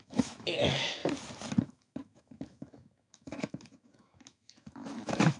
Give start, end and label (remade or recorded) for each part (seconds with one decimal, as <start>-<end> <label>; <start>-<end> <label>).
0.0-1.0 remade; 1.0-1.6 recorded; 1.6-5.4 remade